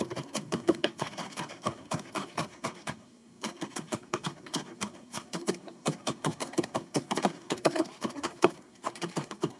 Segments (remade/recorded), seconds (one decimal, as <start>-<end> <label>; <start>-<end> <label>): 0.0-9.6 remade